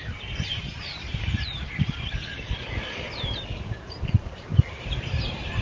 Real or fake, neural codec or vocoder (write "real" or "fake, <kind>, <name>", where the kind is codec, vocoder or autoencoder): real